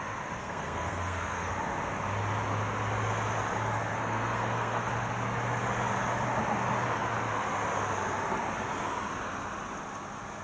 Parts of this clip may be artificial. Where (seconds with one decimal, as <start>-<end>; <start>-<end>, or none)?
0.4-1.5; 3.9-4.9